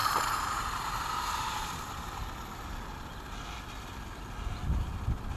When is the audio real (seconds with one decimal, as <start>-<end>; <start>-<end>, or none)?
2.2-5.4